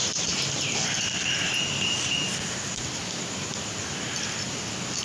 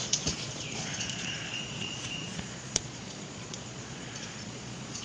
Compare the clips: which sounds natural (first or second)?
first